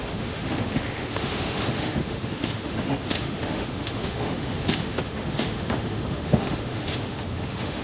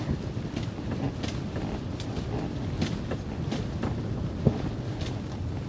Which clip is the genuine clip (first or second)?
second